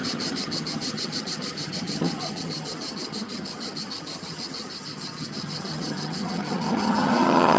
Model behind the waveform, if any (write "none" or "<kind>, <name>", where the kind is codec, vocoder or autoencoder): vocoder, HiFi-GAN